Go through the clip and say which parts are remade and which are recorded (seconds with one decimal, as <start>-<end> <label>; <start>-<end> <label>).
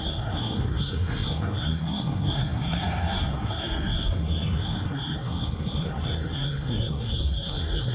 0.0-7.9 remade